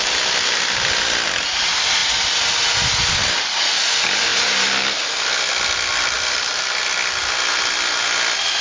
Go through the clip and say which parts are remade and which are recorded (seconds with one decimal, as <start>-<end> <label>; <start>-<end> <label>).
0.0-8.6 recorded